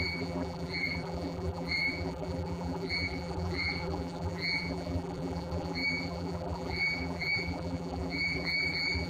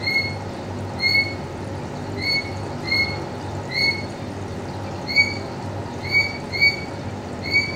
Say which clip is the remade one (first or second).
first